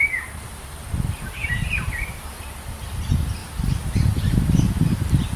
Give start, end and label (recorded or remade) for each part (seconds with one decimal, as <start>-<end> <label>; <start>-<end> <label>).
0.0-1.4 recorded; 1.4-2.9 remade; 2.9-5.4 recorded